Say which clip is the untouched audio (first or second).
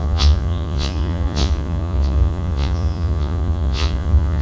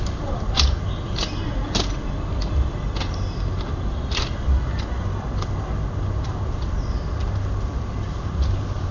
second